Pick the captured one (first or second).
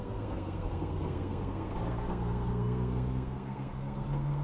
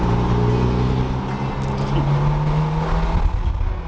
second